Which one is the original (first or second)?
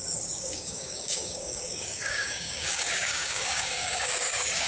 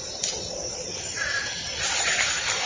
second